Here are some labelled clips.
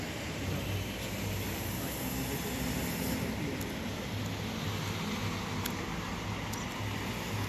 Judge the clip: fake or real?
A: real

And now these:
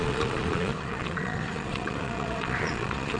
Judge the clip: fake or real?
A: fake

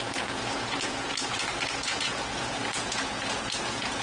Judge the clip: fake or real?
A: fake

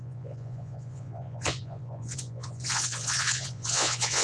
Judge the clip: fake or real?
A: fake